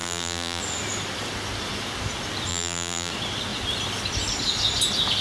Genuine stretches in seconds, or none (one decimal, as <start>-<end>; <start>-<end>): 0.6-2.5; 3.1-5.2